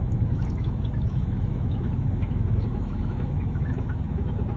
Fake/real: fake